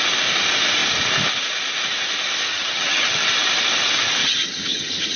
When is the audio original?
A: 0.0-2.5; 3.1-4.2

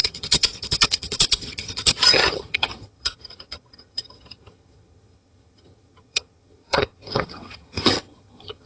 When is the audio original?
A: none

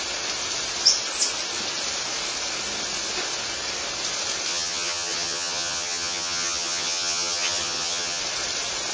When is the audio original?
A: 0.0-4.5; 8.2-8.9

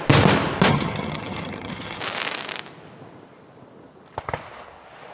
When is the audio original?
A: 0.0-0.7; 2.0-5.1

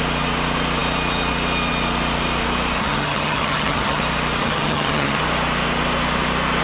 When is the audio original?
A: 0.0-2.8; 4.0-4.4; 5.2-6.6

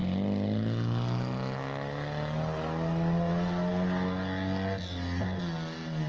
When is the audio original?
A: 0.0-6.1

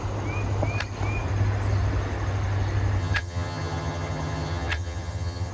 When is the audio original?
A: 0.0-3.0

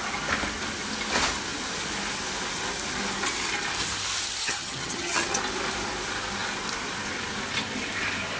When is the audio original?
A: 0.0-4.4; 5.4-8.4